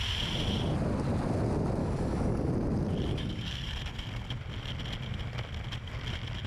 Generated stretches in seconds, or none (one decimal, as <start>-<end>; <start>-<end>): 1.8-2.5; 3.1-3.7